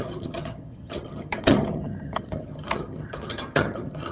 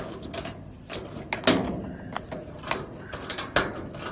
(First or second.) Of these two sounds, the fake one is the first